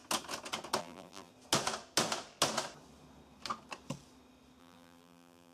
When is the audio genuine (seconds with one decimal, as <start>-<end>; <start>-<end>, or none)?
0.0-0.8; 1.3-4.6